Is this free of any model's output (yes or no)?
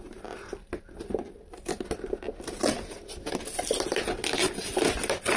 yes